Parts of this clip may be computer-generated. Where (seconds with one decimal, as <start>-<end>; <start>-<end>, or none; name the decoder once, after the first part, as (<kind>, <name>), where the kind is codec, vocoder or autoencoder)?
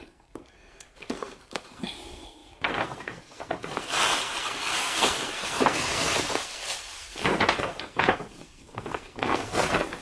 0.0-10.0 (codec, SNAC)